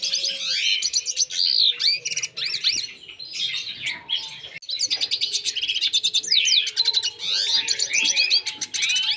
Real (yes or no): yes